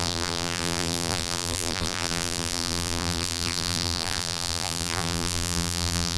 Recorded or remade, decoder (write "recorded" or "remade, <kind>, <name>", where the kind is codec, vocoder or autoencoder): remade, vocoder, BigVGAN v2